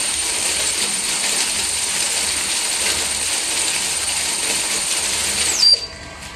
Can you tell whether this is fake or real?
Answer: fake